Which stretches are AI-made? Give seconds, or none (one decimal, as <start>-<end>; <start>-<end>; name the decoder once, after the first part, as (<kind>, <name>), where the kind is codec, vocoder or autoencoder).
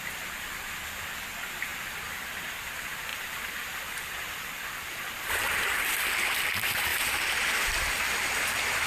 3.1-6.5 (vocoder, BigVGAN v2); 6.9-8.9